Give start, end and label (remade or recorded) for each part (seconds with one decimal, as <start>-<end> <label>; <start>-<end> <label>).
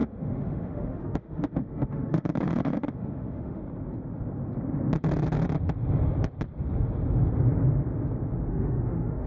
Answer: 0.0-3.6 remade; 3.6-8.5 recorded; 8.5-9.3 remade